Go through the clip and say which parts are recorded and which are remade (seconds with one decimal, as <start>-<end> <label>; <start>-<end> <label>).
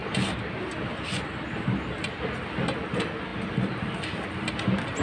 0.0-5.0 recorded